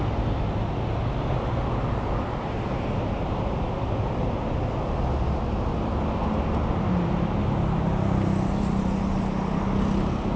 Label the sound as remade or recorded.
recorded